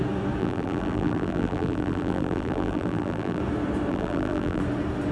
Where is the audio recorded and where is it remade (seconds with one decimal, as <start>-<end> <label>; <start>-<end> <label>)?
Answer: 0.0-0.4 recorded; 0.4-3.4 remade; 3.4-3.9 recorded; 3.9-4.6 remade; 4.6-5.1 recorded